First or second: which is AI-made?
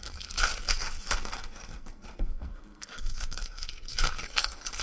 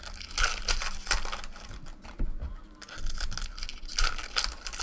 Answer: first